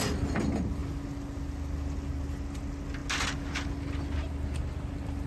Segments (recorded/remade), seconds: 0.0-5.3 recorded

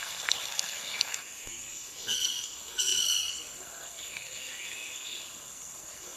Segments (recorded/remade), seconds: 0.0-6.2 remade

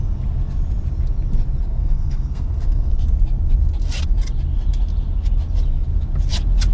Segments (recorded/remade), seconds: 0.0-1.7 recorded; 1.7-2.9 remade; 2.9-6.7 recorded

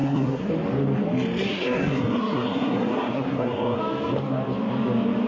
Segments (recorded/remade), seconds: 0.0-0.5 remade; 0.5-1.5 recorded; 1.5-3.8 remade; 3.8-5.3 recorded

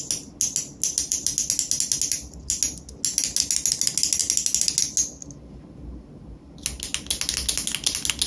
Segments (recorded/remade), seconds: 0.0-8.3 recorded

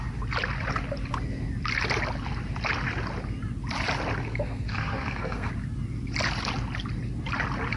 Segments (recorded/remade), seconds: 0.0-4.2 recorded; 4.2-5.5 remade; 5.5-7.8 recorded